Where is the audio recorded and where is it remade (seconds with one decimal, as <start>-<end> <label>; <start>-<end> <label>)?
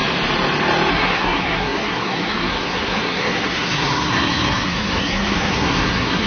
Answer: 0.0-0.9 recorded; 0.9-6.3 remade